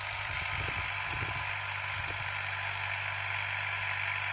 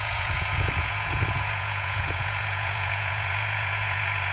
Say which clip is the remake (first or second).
second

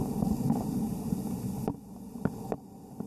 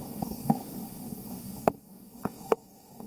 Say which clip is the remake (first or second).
second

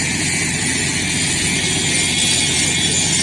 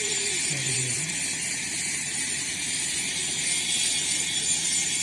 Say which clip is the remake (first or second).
second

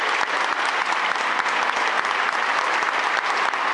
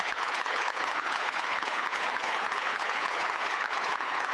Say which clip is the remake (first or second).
second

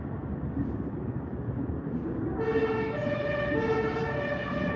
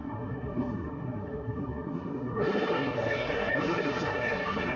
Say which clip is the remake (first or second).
second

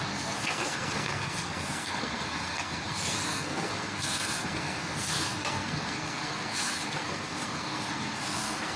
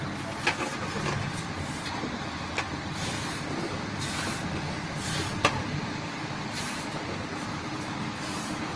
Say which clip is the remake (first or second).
first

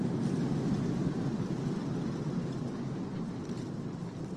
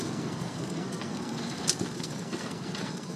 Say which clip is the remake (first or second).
second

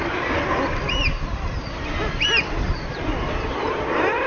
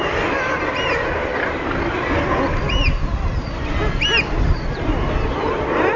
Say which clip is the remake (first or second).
first